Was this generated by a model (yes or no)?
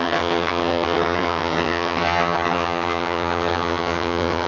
yes